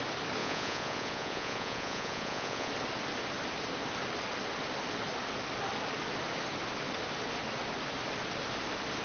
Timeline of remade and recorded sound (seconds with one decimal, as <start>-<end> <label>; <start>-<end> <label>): 0.0-0.4 recorded; 0.4-2.7 remade; 2.7-9.0 recorded